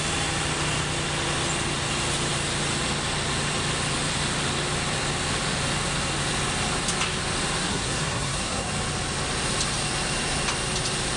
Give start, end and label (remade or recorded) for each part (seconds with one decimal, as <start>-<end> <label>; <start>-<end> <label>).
0.0-7.6 recorded; 7.6-8.7 remade; 8.7-11.2 recorded

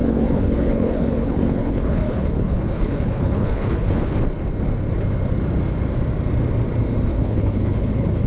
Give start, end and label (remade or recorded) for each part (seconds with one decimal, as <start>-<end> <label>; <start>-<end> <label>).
0.0-4.1 remade; 4.1-7.1 recorded; 7.1-8.3 remade

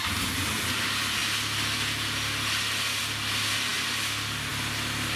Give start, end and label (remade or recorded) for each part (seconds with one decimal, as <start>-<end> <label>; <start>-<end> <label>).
0.0-5.2 recorded

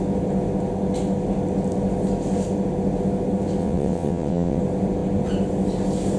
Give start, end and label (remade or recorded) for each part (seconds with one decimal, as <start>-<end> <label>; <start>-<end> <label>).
0.0-3.6 recorded; 3.6-4.6 remade; 4.6-6.2 recorded

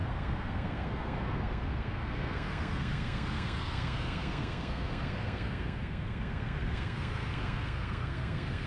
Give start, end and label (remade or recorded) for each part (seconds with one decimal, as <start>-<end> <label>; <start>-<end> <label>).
0.0-8.7 remade

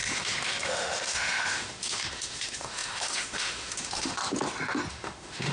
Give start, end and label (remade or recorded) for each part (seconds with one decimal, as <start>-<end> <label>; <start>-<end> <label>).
0.0-4.2 remade; 4.2-4.9 recorded; 4.9-5.5 remade

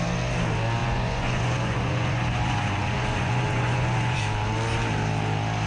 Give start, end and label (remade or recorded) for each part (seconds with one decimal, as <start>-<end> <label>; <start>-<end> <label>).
0.0-0.8 recorded; 0.8-4.2 remade; 4.2-5.7 recorded

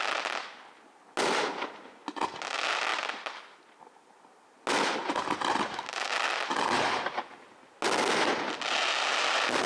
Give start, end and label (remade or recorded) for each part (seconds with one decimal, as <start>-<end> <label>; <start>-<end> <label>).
0.0-9.7 recorded